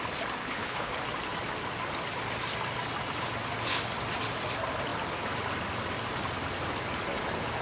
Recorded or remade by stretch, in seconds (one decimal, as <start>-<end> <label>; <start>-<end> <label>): 0.0-0.4 recorded; 0.4-0.9 remade; 0.9-7.6 recorded